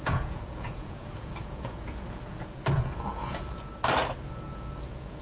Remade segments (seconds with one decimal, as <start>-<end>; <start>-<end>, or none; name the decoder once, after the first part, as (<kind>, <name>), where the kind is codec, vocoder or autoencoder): 0.0-3.7 (vocoder, Vocos); 4.2-5.2